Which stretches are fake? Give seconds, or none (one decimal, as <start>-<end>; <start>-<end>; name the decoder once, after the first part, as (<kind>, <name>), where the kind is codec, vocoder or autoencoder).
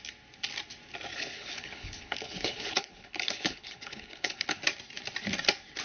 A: 1.1-4.6 (codec, HILCodec)